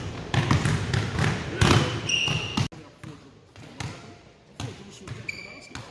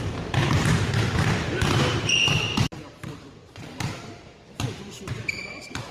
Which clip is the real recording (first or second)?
first